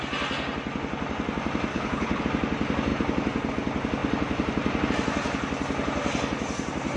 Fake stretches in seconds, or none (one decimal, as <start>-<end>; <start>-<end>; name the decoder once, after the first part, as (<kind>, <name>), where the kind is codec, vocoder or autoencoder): 1.7-2.2 (codec, HILCodec)

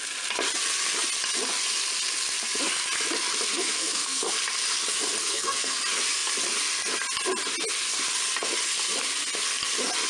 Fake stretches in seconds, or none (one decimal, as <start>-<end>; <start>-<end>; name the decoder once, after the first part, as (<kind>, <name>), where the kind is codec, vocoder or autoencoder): 3.5-4.3 (codec, SNAC); 5.2-5.8

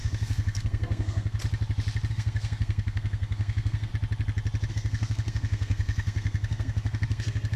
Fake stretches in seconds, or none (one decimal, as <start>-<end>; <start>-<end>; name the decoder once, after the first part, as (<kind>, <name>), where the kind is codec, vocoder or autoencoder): 0.0-1.4 (codec, SNAC); 2.1-3.9; 4.7-7.6

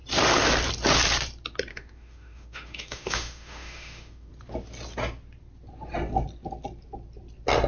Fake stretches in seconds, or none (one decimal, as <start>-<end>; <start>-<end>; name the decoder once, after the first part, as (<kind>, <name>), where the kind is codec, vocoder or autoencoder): 1.7-4.3 (autoencoder, DAC-VAE)

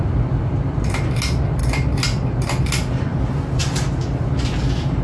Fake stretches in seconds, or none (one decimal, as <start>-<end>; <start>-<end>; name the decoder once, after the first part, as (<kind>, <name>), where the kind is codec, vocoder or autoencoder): none

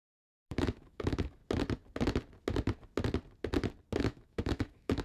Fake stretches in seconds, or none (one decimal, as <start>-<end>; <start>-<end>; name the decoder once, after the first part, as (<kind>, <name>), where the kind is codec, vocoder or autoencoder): 0.0-1.4 (autoencoder, DAC-VAE); 4.0-5.0

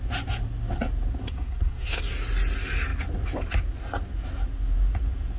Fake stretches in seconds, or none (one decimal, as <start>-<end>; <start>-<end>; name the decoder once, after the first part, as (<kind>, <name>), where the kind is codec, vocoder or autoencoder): 1.2-2.0 (codec, SNAC)